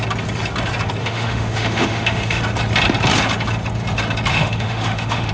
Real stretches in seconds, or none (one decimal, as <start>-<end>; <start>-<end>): 0.0-1.0; 2.4-4.3